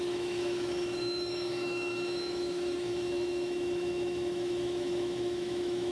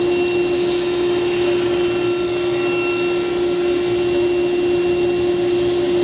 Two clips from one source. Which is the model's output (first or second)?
first